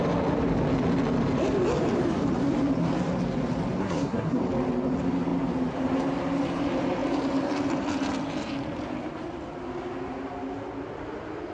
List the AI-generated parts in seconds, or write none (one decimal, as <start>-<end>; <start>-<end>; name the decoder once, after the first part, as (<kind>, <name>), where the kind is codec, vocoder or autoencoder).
3.8-4.4 (codec, SNAC)